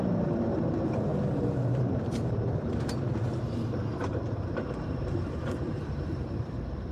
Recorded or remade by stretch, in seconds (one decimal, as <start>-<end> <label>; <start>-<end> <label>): 0.0-6.9 remade